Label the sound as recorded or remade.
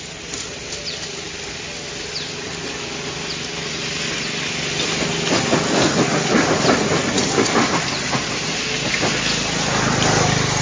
recorded